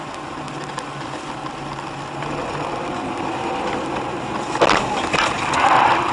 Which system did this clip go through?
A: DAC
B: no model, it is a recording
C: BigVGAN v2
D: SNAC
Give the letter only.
B